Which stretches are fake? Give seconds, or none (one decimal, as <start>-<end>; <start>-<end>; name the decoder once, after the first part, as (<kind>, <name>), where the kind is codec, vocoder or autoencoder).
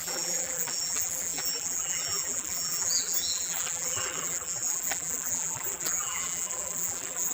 0.0-7.3 (vocoder, BigVGAN v2)